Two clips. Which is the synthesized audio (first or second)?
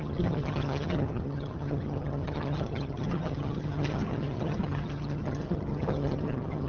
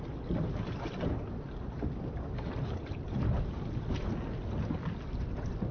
first